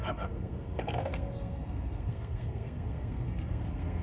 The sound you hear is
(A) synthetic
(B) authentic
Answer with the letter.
A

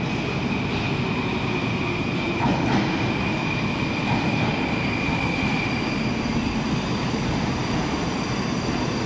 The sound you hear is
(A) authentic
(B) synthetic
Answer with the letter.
A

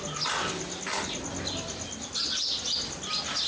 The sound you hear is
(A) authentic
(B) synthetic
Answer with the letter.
A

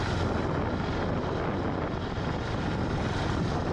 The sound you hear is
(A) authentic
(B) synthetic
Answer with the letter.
A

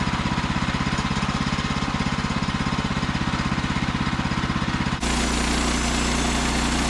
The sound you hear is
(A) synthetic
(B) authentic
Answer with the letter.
B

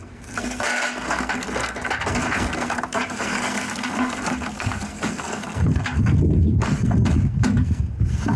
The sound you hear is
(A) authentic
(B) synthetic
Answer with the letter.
B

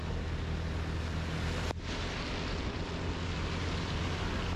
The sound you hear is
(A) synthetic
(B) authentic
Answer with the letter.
B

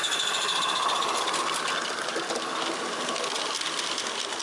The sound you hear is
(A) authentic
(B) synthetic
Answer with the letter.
A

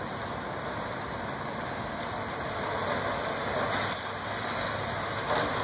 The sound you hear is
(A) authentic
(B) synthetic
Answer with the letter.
A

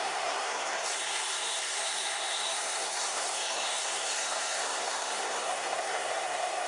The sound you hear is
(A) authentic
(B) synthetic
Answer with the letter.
B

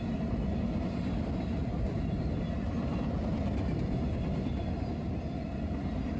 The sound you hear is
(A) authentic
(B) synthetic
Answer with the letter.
A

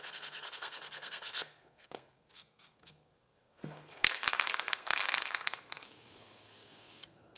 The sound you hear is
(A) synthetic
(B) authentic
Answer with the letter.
A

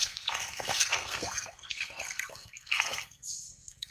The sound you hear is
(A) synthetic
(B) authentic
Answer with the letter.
A